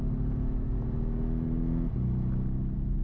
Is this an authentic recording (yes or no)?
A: yes